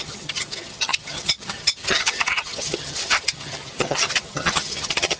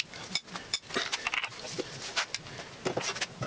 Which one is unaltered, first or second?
second